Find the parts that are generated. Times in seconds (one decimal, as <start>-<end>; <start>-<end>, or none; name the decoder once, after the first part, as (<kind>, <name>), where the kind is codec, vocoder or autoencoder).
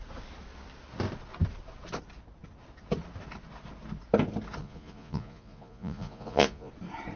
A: 4.6-6.7 (vocoder, Vocos)